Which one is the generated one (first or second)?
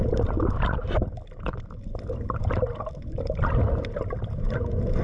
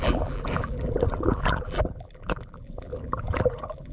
second